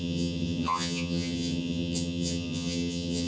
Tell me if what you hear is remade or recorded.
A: remade